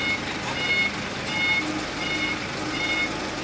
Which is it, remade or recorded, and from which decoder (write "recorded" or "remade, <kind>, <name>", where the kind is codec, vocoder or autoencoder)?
recorded